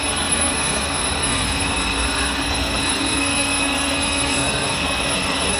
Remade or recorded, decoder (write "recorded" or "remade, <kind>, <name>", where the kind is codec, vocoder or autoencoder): remade, codec, SNAC